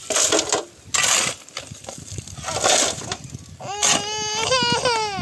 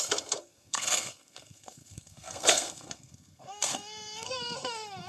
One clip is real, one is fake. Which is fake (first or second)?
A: second